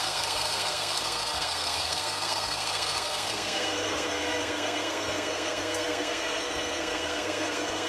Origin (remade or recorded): remade